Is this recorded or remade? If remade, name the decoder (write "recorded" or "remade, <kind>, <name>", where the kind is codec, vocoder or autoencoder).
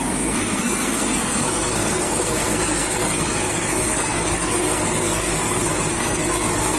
remade, codec, SNAC